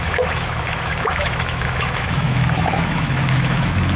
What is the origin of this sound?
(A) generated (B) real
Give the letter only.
A